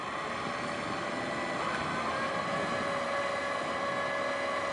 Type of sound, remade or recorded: recorded